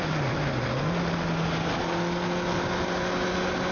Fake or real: real